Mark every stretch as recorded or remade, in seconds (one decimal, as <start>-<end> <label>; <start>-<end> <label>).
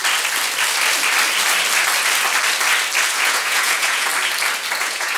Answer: 0.0-3.1 recorded; 3.1-4.1 remade; 4.1-4.8 recorded; 4.8-5.2 remade